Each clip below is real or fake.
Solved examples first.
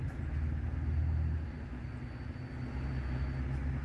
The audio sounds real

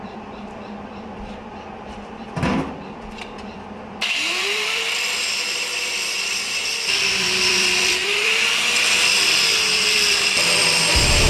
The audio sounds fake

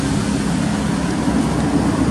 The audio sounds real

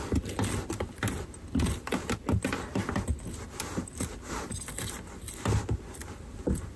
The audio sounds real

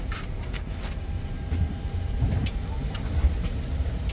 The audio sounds fake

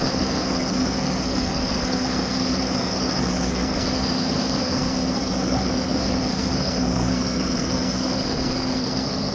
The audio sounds fake